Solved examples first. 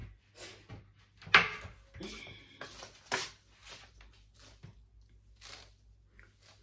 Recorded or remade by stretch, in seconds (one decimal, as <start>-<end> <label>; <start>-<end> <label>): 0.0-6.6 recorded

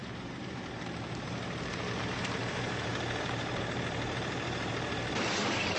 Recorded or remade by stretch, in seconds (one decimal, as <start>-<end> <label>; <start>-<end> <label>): 0.0-5.8 remade

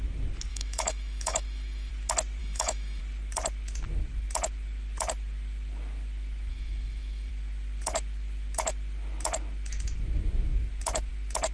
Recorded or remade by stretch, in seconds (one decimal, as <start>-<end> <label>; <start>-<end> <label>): 0.0-0.5 recorded; 0.5-1.9 remade; 1.9-2.4 recorded; 2.4-3.0 remade; 3.0-6.5 recorded; 6.5-7.3 remade; 7.3-11.5 recorded

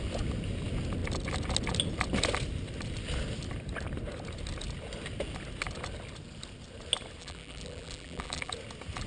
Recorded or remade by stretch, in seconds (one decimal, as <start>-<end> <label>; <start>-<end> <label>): 0.0-7.2 recorded; 7.2-8.5 remade; 8.5-9.1 recorded

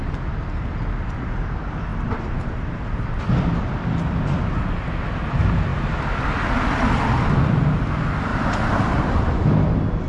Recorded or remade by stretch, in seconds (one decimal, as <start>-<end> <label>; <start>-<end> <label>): 0.0-1.9 recorded; 1.9-3.2 remade; 3.2-8.3 recorded; 8.3-9.0 remade; 9.0-10.1 recorded

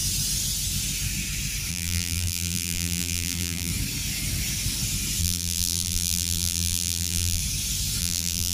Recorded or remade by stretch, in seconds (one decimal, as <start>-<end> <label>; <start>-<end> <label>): 0.0-1.7 recorded; 1.7-3.7 remade; 3.7-5.2 recorded; 5.2-7.4 remade; 7.4-8.0 recorded; 8.0-8.5 remade